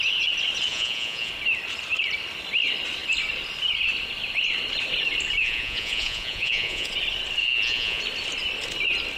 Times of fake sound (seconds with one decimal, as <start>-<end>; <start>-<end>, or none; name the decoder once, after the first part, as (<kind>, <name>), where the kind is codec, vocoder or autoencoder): 0.7-1.3 (vocoder, Vocos); 5.4-6.9; 7.4-8.0